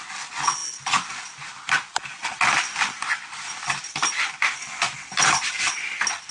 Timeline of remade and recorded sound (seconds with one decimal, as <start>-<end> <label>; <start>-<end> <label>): 0.0-6.3 recorded